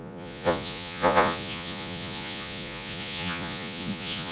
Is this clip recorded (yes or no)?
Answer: no